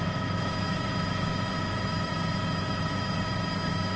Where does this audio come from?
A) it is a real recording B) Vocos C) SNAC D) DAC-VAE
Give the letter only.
D